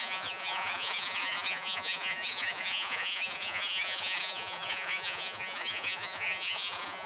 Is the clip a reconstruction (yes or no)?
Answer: yes